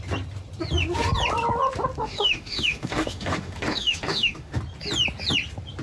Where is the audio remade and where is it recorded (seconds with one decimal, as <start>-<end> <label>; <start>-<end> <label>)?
0.0-2.0 recorded; 2.0-4.6 remade; 4.6-5.8 recorded